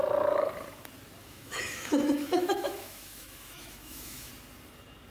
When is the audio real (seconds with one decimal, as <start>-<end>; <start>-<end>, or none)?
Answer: 0.0-1.2; 4.3-5.1